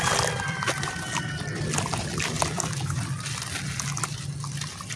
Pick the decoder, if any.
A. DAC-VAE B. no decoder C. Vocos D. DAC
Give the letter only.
B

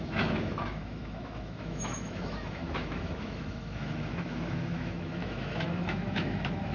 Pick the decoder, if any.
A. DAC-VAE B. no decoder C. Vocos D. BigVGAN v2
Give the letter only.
A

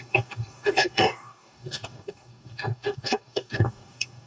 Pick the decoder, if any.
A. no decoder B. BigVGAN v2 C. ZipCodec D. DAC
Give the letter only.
D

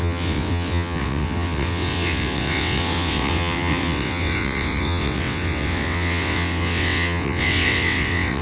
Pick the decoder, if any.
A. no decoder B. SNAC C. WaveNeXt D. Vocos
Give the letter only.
C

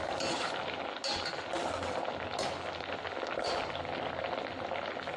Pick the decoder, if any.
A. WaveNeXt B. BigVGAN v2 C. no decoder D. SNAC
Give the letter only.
C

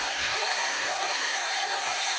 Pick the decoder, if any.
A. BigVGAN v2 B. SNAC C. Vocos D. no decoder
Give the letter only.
B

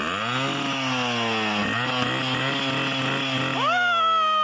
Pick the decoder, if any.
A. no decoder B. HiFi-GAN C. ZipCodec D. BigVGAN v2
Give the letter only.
A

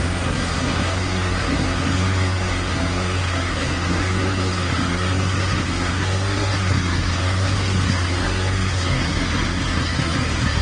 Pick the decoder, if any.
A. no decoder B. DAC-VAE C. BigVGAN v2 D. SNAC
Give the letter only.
D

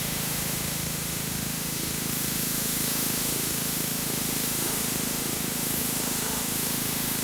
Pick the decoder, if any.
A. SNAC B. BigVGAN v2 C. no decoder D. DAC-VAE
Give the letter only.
D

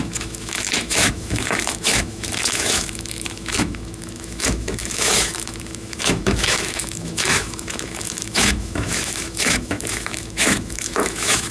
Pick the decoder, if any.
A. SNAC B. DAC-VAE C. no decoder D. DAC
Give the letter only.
B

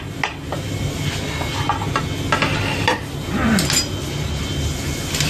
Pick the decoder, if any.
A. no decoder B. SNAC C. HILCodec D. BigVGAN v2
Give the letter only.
A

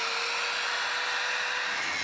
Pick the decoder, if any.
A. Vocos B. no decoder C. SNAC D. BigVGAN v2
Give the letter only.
B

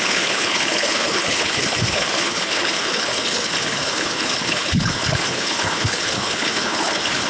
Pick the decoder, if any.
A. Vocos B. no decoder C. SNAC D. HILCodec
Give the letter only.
D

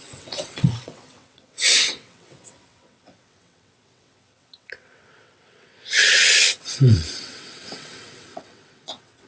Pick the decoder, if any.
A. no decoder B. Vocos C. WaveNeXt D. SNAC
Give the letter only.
C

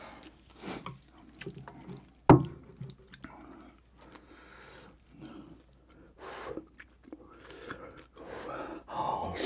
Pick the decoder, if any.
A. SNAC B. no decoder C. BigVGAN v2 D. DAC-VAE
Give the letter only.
B